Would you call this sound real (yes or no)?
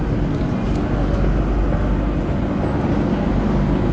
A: yes